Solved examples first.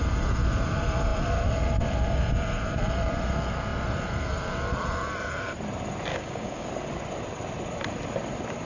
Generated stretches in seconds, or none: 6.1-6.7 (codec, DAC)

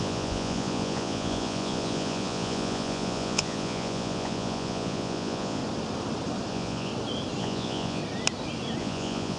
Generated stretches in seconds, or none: 0.0-5.6 (vocoder, Vocos); 6.5-6.9; 7.4-8.0; 8.8-9.4

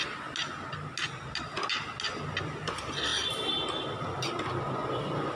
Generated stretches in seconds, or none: none

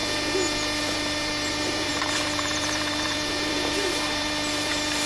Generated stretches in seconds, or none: 0.8-5.1 (vocoder, BigVGAN v2)

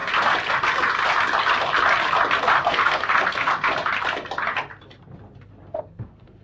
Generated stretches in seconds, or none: 2.6-3.5 (codec, SNAC); 5.8-6.4

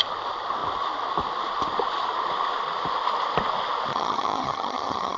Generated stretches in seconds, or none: 3.9-5.2 (vocoder, HiFi-GAN)

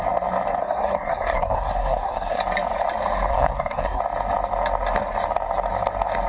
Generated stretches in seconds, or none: 0.6-2.4 (codec, SNAC); 3.3-4.0